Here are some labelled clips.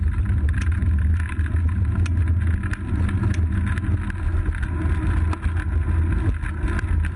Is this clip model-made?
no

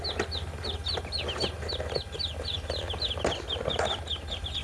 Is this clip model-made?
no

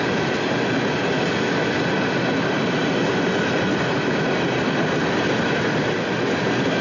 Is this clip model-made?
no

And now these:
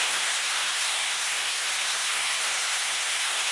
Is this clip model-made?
yes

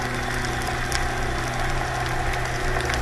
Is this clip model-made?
no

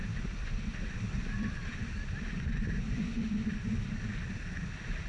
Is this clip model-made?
no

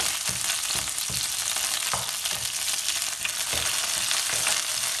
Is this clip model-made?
no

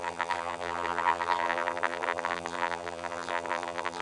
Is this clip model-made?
yes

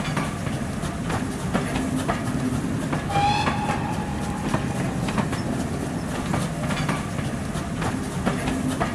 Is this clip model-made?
no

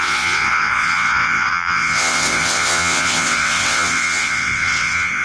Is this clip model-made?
yes